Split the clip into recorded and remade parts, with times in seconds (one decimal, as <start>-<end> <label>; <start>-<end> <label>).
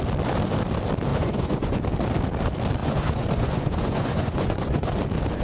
0.0-1.1 recorded; 1.1-1.8 remade; 1.8-2.8 recorded; 2.8-4.9 remade; 4.9-5.4 recorded